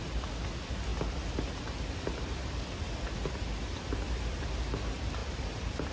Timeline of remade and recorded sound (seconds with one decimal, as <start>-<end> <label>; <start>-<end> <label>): 0.0-5.9 recorded